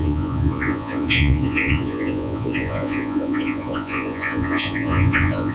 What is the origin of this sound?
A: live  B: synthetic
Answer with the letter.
B